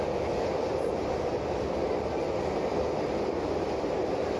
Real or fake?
real